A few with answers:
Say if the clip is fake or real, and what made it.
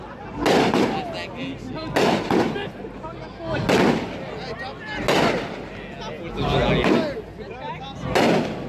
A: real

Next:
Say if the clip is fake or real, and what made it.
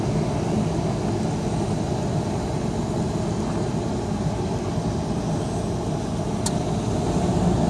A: real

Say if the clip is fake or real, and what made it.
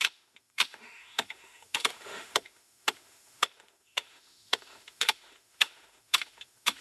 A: fake, autoencoder, DAC-VAE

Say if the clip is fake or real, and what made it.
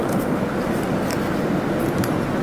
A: real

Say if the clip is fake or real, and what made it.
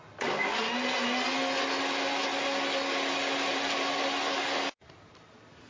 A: real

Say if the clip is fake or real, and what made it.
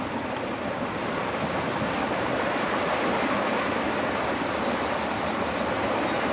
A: real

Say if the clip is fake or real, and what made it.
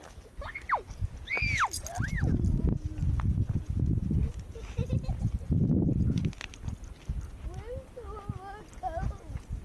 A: real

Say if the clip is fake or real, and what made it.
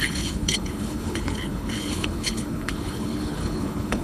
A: fake, codec, HILCodec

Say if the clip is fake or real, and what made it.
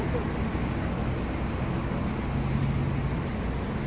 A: real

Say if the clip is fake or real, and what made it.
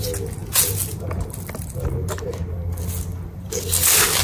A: real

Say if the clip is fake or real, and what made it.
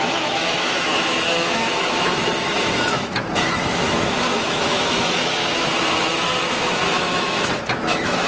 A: fake, autoencoder, DAC-VAE